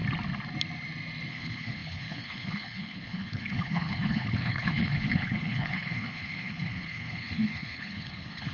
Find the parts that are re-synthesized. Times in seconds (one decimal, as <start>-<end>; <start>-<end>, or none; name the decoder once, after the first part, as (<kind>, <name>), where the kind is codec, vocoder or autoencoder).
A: 1.3-8.5 (codec, HILCodec)